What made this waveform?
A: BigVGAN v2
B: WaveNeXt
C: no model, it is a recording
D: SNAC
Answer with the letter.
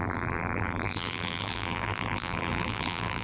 A